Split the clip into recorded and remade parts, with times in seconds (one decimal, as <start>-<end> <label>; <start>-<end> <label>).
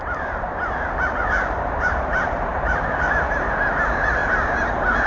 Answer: 0.0-4.2 remade; 4.2-5.1 recorded